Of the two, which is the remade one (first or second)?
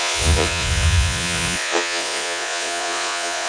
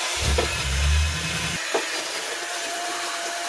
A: first